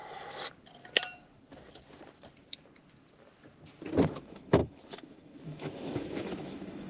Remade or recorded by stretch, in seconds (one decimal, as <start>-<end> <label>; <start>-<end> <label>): 0.0-4.1 recorded; 4.1-6.9 remade